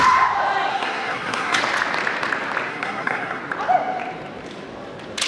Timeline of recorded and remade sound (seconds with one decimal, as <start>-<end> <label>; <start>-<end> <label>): 0.0-0.7 recorded; 0.7-1.6 remade; 1.6-2.7 recorded; 2.7-3.4 remade; 3.4-5.3 recorded